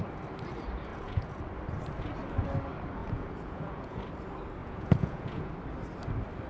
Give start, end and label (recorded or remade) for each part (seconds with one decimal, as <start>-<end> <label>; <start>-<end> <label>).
0.0-0.9 recorded; 0.9-1.4 remade; 1.4-3.0 recorded; 3.0-4.0 remade; 4.0-4.6 recorded; 4.6-5.5 remade; 5.5-6.5 recorded